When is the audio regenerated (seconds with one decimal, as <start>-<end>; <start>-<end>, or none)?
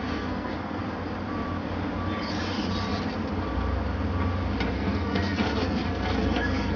0.0-0.8; 4.7-6.8